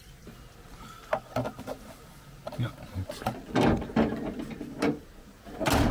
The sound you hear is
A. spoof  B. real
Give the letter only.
B